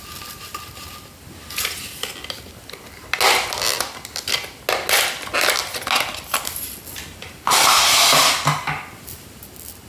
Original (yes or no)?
yes